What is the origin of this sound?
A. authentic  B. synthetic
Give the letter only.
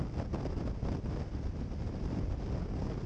A